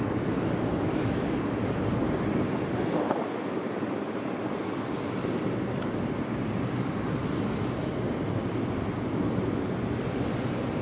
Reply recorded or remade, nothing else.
recorded